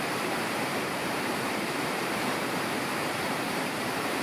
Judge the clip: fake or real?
fake